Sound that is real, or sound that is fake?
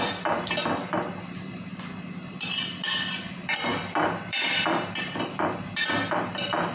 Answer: fake